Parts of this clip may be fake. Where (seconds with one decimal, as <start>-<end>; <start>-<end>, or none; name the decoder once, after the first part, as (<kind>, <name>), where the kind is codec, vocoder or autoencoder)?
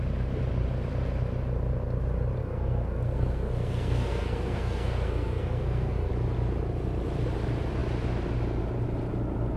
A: 2.4-6.1 (codec, SNAC)